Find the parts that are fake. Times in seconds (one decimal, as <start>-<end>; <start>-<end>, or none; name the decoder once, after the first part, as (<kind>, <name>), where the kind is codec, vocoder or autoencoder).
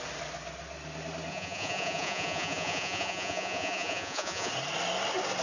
1.3-4.5 (vocoder, Vocos)